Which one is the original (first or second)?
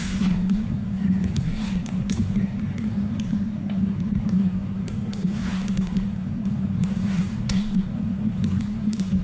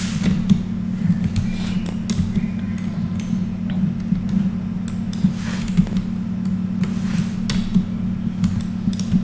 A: second